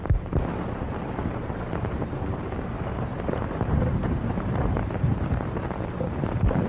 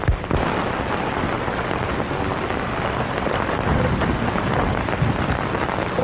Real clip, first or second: second